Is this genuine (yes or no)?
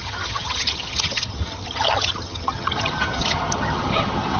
no